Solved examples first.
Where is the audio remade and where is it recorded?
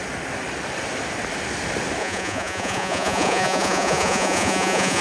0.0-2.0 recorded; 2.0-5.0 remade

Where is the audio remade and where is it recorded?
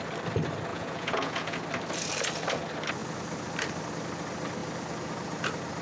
0.0-0.7 recorded; 0.7-1.6 remade; 1.6-5.8 recorded